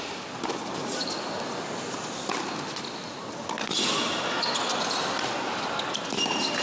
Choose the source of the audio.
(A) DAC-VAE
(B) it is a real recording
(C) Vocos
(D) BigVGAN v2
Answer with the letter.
B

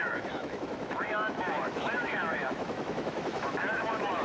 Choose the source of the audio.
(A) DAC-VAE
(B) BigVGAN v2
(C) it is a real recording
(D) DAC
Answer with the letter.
A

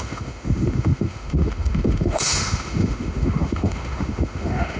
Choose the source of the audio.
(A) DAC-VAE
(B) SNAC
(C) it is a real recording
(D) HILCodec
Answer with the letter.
A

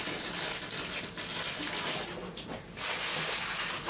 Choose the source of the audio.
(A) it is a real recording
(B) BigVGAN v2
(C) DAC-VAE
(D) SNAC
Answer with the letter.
A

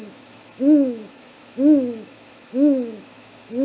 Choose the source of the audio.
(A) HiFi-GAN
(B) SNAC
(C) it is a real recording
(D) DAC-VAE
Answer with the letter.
D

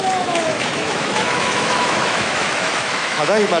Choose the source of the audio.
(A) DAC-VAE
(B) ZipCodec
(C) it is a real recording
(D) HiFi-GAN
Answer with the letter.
A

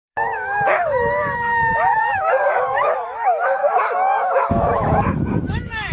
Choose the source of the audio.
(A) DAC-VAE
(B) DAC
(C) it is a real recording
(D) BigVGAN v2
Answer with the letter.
A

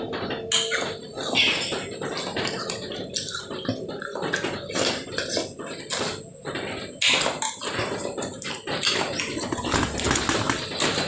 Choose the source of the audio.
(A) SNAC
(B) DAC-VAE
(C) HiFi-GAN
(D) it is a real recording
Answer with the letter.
D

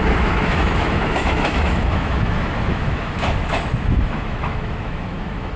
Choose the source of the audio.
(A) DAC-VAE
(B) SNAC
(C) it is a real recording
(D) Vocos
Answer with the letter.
A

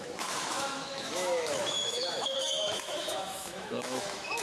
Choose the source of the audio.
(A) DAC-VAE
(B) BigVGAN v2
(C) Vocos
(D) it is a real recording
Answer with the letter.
A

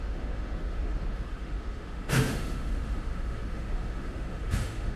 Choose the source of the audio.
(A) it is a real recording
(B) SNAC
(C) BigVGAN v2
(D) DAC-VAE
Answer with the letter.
D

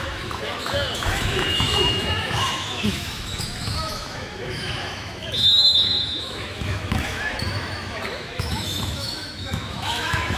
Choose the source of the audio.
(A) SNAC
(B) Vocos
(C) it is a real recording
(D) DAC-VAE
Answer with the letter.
D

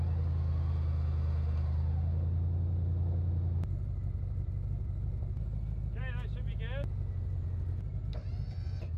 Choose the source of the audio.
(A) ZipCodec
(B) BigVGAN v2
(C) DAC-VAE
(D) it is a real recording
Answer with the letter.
D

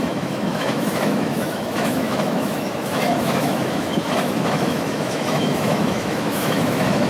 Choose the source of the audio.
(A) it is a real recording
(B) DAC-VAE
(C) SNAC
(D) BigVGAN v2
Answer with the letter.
B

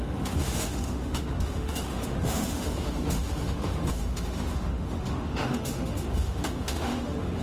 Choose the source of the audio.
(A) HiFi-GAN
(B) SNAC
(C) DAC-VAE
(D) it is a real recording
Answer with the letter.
C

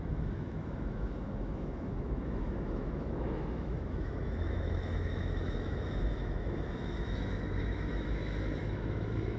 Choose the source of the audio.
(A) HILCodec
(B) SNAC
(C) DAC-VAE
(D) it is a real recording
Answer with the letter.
C